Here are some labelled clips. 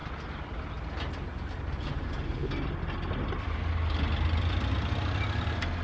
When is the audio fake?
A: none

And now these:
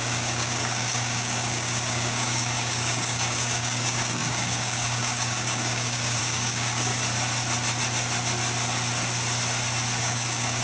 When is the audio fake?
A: 0.0-6.9 (codec, DAC); 10.0-10.6

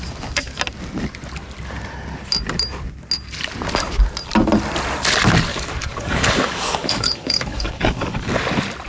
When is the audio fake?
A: 5.5-8.4 (codec, DAC)

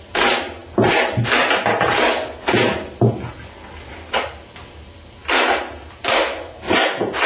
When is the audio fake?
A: none

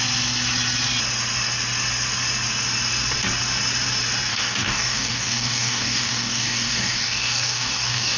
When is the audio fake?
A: 4.3-8.2 (codec, DAC)